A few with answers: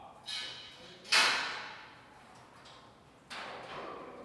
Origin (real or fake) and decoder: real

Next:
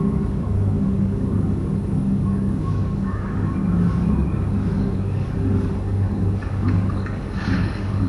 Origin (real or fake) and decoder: fake, codec, DAC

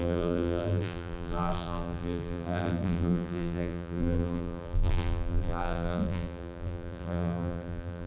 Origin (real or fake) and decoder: fake, vocoder, BigVGAN v2